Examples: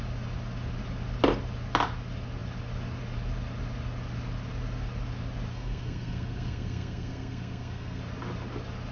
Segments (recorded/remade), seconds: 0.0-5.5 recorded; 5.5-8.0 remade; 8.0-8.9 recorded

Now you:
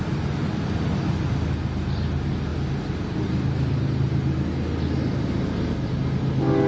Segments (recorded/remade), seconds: 0.0-6.7 recorded